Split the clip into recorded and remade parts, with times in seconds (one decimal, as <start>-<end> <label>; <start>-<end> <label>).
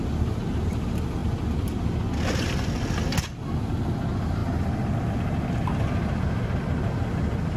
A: 0.0-7.6 recorded